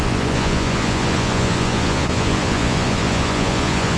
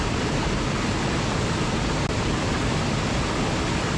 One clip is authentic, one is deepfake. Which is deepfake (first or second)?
first